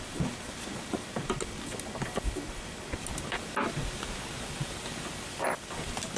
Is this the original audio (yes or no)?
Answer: yes